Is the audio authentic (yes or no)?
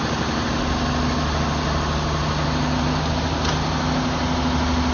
yes